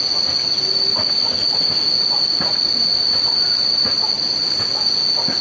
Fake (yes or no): no